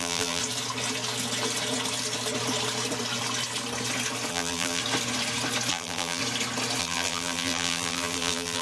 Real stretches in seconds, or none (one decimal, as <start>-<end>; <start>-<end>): 0.4-4.3; 4.8-5.7; 6.2-6.8